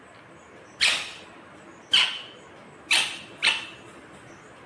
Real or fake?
real